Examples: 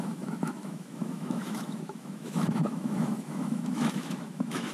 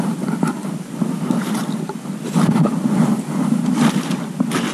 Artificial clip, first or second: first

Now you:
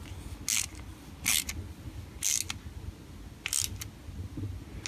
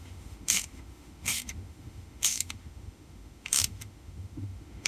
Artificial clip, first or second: second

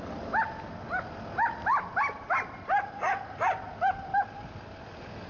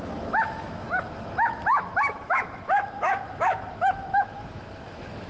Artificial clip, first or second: second